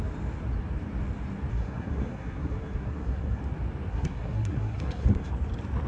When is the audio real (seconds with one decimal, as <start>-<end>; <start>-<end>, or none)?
0.0-1.5; 3.4-3.9; 5.3-5.9